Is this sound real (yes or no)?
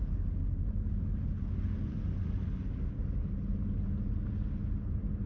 yes